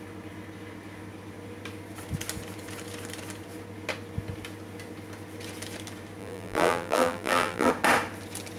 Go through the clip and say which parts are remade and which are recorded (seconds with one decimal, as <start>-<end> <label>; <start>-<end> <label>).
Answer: 0.0-6.2 recorded; 6.2-7.7 remade; 7.7-8.6 recorded